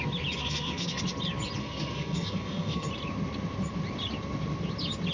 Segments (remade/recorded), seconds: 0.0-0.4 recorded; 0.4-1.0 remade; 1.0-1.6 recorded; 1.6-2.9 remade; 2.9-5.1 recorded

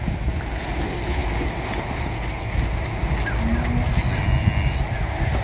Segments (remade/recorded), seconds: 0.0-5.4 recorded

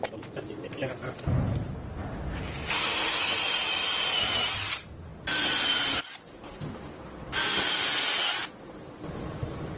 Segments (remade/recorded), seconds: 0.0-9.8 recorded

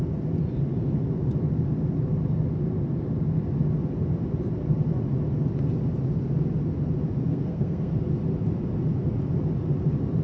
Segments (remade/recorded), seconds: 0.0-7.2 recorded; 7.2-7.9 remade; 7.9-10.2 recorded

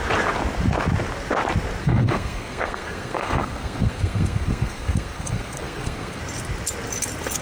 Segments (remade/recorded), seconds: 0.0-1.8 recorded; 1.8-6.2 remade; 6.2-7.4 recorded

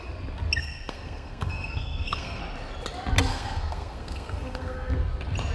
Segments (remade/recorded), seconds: 0.0-0.6 recorded; 0.6-2.4 remade; 2.4-3.3 recorded; 3.3-4.9 remade; 4.9-5.5 recorded

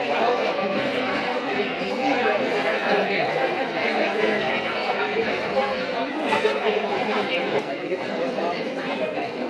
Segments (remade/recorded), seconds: 0.0-9.5 remade

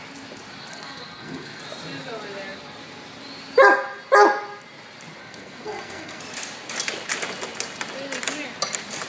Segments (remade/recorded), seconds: 0.0-0.7 recorded; 0.7-1.6 remade; 1.6-5.2 recorded; 5.2-6.2 remade; 6.2-9.1 recorded